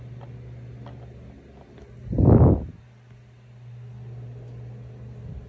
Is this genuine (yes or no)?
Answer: yes